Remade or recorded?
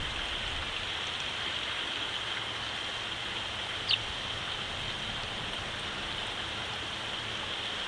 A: recorded